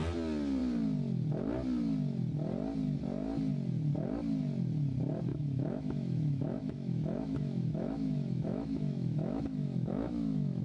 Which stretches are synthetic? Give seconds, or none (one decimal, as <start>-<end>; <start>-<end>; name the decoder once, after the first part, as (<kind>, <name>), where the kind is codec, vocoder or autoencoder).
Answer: 5.3-10.6 (autoencoder, DAC-VAE)